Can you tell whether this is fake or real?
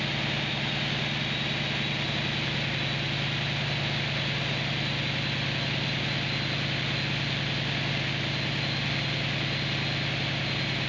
real